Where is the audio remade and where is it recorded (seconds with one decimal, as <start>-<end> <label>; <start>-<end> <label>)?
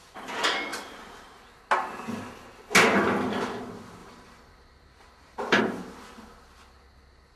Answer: 0.0-0.7 recorded; 0.7-1.4 remade; 1.4-4.0 recorded; 4.0-5.6 remade; 5.6-7.4 recorded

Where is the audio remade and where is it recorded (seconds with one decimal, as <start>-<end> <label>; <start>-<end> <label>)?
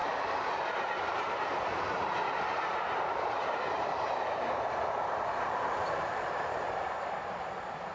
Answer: 0.0-7.9 remade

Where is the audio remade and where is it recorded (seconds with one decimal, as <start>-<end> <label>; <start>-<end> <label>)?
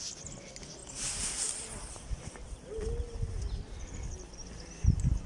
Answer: 0.0-5.3 recorded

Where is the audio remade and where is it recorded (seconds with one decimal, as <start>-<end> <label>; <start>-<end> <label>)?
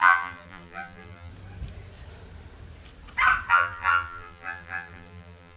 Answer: 0.0-1.3 remade; 1.3-3.5 recorded; 3.5-5.6 remade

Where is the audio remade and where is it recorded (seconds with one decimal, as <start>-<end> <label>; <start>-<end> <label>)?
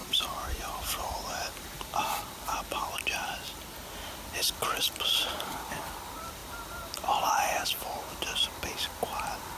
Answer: 0.0-2.1 remade; 2.1-5.2 recorded; 5.2-5.8 remade; 5.8-9.6 recorded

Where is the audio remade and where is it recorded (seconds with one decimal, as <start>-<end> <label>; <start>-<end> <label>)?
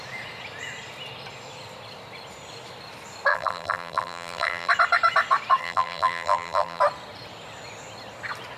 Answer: 0.0-3.3 recorded; 3.3-4.7 remade; 4.7-5.6 recorded; 5.6-6.8 remade; 6.8-8.6 recorded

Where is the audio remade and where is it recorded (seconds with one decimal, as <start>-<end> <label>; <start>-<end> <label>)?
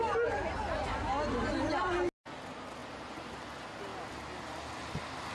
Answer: 0.0-2.8 recorded; 2.8-3.3 remade; 3.3-5.3 recorded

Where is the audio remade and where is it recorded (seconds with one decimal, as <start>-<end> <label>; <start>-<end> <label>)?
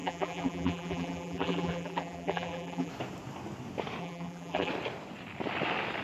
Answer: 0.0-2.9 remade; 2.9-4.0 recorded; 4.0-4.7 remade; 4.7-6.0 recorded